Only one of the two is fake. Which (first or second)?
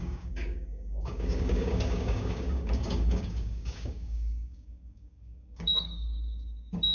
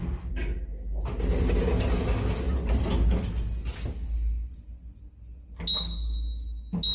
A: first